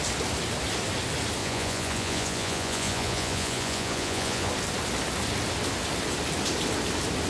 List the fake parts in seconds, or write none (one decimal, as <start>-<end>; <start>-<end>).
1.4-4.5